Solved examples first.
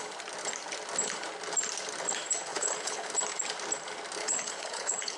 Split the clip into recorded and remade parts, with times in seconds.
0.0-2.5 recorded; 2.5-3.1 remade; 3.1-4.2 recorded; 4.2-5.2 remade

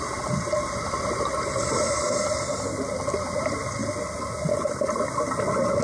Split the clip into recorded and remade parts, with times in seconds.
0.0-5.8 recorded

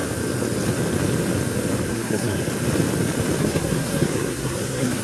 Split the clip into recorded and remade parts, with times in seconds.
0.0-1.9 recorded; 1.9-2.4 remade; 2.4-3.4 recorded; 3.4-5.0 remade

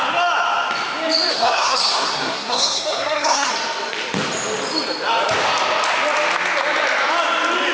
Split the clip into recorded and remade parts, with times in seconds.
0.0-1.3 recorded; 1.3-3.5 remade; 3.5-7.7 recorded

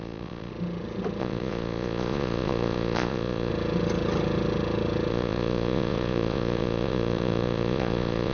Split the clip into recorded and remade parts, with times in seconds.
0.0-0.5 remade; 0.5-1.2 recorded; 1.2-3.5 remade; 3.5-5.1 recorded; 5.1-8.3 remade

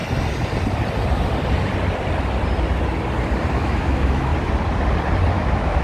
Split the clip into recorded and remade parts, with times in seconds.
0.0-3.5 recorded; 3.5-4.3 remade; 4.3-5.3 recorded; 5.3-5.8 remade

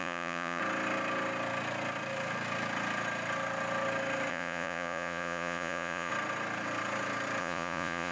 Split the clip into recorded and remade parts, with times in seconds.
0.0-0.6 remade; 0.6-4.3 recorded; 4.3-6.1 remade; 6.1-7.4 recorded; 7.4-8.1 remade

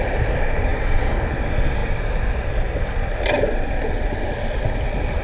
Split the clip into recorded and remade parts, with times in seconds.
0.0-5.2 recorded